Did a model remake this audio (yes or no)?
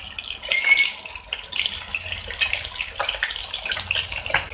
no